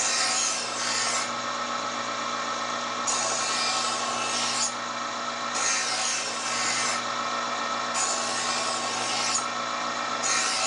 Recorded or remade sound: recorded